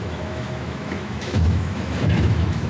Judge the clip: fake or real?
fake